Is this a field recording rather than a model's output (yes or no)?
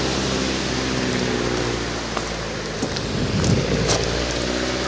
yes